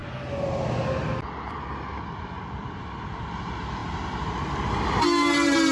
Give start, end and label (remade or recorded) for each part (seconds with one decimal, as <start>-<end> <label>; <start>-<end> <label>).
0.0-5.7 recorded